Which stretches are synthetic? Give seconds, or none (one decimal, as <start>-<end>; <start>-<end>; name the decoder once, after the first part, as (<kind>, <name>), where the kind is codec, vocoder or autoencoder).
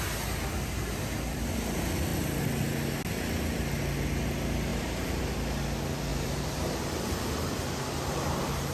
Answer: 4.7-5.2 (vocoder, BigVGAN v2); 6.1-8.7